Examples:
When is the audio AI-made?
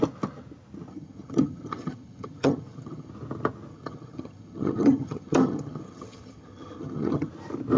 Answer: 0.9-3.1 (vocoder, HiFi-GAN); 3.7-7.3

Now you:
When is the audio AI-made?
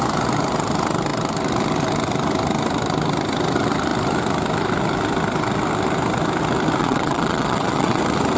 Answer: 6.8-8.0 (vocoder, WaveNeXt)